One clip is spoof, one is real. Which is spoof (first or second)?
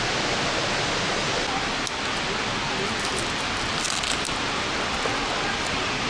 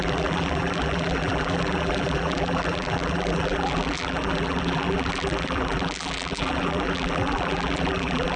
second